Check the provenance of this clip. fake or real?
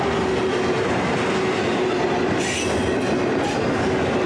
real